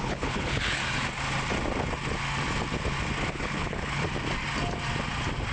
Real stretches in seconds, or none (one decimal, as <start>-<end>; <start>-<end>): 0.8-3.3; 4.0-5.5